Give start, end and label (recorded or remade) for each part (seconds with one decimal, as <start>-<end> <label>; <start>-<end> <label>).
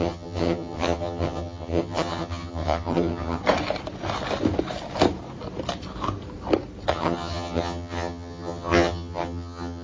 0.0-3.4 remade; 3.4-6.9 recorded; 6.9-9.8 remade